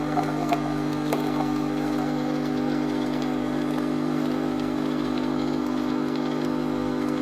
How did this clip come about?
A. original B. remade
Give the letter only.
B